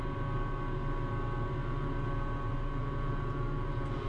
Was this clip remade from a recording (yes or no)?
no